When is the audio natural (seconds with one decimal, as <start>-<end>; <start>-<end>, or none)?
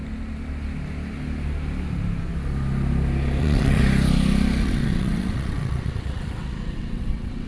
0.0-3.4; 3.8-4.6